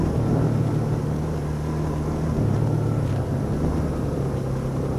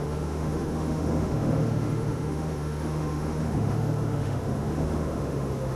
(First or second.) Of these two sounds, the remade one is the second